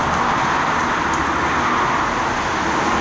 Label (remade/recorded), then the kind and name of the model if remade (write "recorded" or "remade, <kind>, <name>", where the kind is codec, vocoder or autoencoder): recorded